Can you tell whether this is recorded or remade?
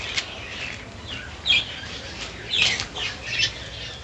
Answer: recorded